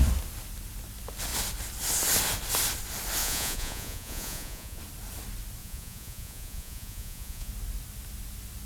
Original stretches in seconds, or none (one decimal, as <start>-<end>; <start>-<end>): 0.0-3.2; 4.8-5.6; 7.5-8.7